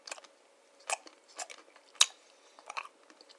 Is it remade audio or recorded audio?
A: recorded